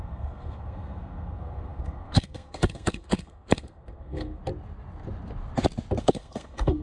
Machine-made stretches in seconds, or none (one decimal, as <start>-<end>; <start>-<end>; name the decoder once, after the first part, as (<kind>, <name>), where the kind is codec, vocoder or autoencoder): 0.0-4.4 (codec, SNAC); 6.0-6.8